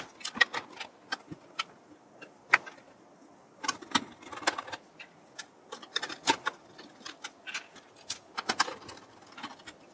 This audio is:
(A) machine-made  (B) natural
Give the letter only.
B